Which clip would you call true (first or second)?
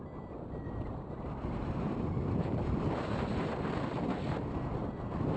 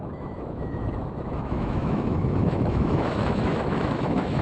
first